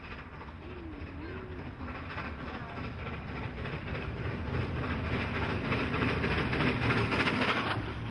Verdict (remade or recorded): recorded